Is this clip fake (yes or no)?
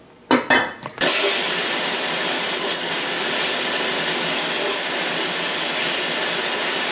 no